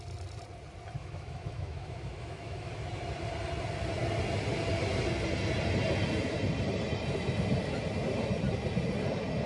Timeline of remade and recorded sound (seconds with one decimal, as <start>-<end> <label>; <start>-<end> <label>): 0.0-1.0 recorded; 1.0-2.7 remade; 2.7-9.5 recorded